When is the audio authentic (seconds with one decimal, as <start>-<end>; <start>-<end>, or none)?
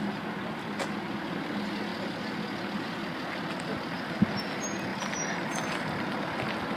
0.0-6.8